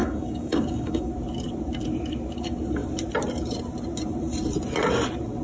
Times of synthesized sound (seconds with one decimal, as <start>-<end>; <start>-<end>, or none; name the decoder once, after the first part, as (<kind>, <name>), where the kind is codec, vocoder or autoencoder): 0.0-1.1 (codec, DAC)